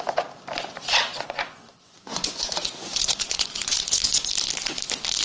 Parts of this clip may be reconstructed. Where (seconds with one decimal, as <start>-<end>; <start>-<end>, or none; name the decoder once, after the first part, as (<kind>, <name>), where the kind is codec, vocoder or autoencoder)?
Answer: 1.1-4.2 (vocoder, Vocos)